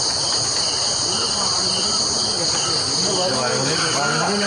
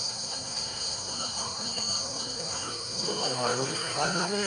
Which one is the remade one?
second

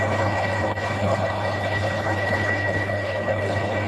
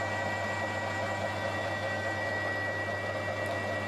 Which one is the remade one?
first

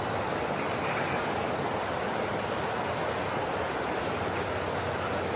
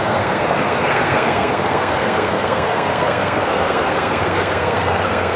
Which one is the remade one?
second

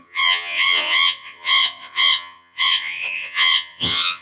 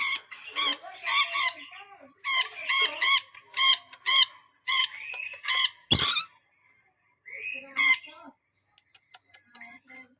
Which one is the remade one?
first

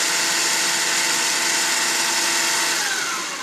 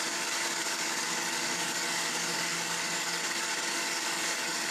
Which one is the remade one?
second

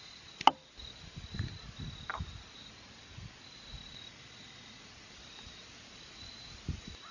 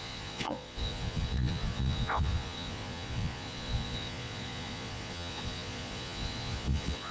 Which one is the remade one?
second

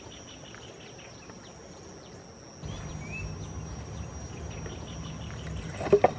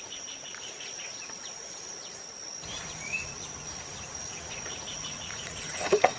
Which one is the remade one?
second